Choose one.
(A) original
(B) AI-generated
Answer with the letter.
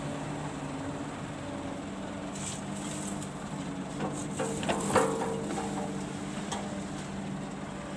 A